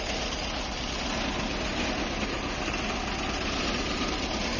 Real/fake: real